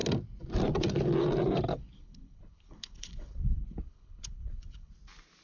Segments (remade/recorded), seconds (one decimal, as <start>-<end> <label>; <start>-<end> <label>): 0.0-1.7 recorded; 1.7-4.9 remade; 4.9-5.4 recorded